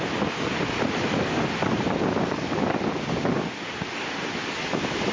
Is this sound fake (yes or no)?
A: no